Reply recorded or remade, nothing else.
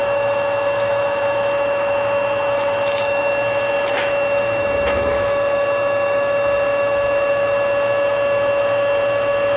remade